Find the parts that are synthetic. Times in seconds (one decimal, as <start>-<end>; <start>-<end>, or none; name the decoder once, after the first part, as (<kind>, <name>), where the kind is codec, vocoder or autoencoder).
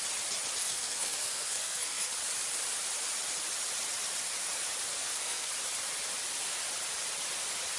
0.6-2.1 (codec, SNAC); 4.9-5.5